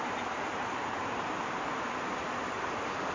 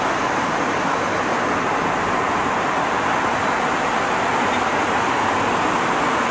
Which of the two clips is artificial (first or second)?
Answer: first